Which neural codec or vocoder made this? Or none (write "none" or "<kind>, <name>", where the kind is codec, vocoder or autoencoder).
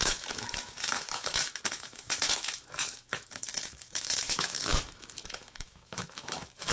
autoencoder, DAC-VAE